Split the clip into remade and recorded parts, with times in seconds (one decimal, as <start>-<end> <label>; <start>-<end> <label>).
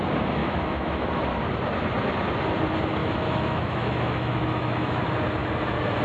0.0-0.4 recorded; 0.4-1.1 remade; 1.1-3.0 recorded; 3.0-5.0 remade; 5.0-6.0 recorded